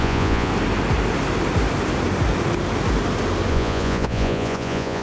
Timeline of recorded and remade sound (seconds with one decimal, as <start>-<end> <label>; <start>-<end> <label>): 0.0-0.5 remade; 0.5-3.5 recorded; 3.5-5.0 remade